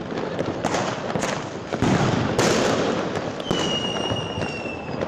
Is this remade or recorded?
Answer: recorded